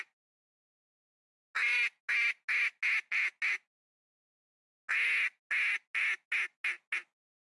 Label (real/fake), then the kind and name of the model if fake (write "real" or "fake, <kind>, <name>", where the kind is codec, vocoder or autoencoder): real